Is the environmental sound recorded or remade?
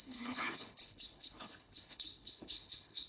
remade